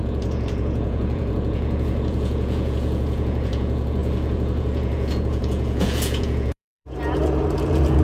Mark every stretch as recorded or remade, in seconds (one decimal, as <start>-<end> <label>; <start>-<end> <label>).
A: 0.0-8.0 remade